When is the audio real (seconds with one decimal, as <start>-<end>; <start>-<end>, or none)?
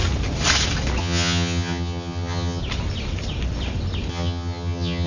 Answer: 0.0-1.0; 2.6-4.1